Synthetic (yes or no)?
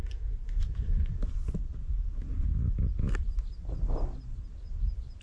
no